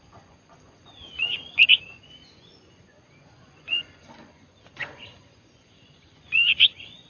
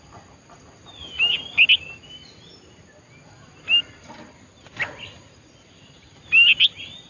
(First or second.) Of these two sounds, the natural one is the second